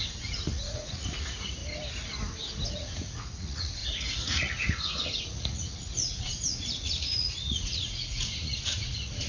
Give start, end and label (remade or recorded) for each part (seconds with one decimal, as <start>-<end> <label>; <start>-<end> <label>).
0.0-1.6 remade; 1.6-2.7 recorded; 2.7-9.3 remade